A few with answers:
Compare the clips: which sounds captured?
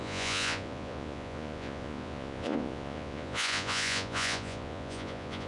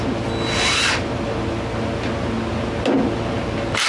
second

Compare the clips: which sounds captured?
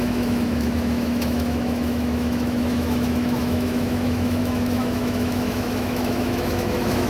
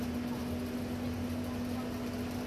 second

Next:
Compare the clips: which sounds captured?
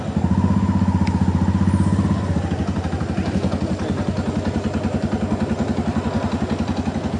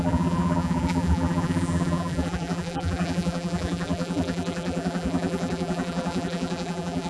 first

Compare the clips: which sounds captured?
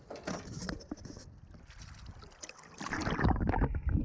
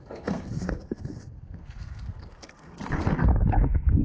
first